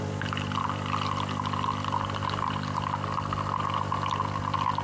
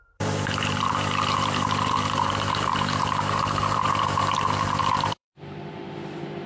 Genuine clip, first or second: first